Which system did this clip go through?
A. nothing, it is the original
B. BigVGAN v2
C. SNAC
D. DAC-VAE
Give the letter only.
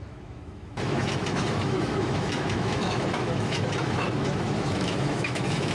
D